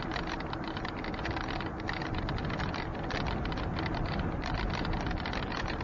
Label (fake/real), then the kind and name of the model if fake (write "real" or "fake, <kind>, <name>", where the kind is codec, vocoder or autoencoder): real